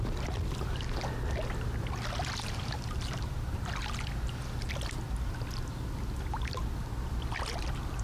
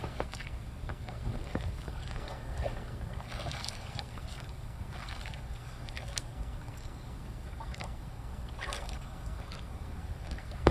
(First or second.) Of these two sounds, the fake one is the second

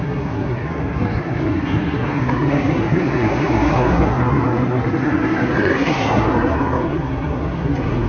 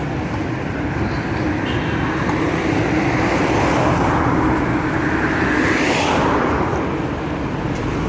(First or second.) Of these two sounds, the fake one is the first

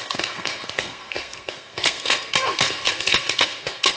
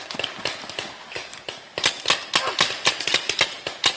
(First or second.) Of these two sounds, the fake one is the first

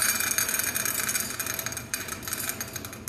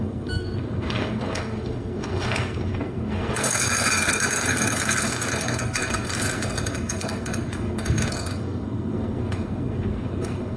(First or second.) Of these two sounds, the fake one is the second